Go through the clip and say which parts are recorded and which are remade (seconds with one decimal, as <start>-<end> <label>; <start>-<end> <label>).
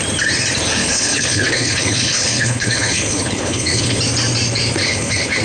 0.0-0.8 recorded; 0.8-4.0 remade; 4.0-4.8 recorded; 4.8-5.4 remade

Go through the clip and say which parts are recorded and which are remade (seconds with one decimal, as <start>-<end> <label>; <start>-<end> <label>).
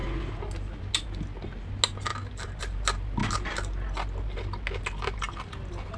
0.0-6.0 recorded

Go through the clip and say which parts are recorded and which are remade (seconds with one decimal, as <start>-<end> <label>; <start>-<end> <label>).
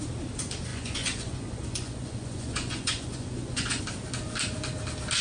0.0-0.7 recorded; 0.7-3.8 remade; 3.8-5.2 recorded